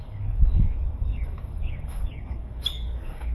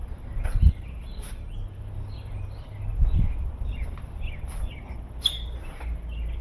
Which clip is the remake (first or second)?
first